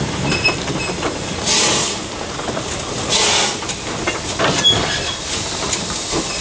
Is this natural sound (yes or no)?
yes